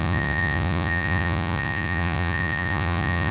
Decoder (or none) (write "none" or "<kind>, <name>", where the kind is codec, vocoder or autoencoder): vocoder, Vocos